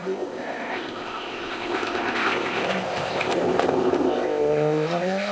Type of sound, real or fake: fake